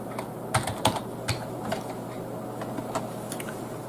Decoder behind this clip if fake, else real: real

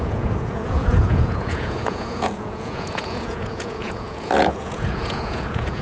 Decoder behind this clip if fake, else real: fake, vocoder, Vocos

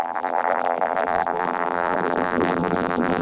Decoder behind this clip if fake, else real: fake, vocoder, BigVGAN v2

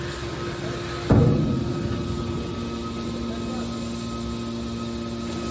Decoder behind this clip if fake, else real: real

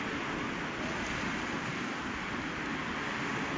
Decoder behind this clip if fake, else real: real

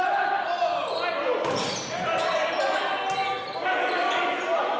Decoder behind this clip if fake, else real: real